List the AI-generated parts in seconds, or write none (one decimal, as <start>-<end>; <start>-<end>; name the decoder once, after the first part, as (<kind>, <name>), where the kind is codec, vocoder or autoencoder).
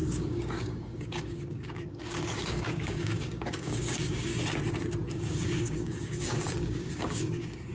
0.0-4.3 (codec, DAC); 5.1-7.7